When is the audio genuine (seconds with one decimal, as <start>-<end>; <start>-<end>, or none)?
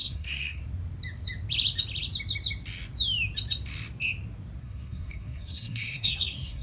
0.6-4.6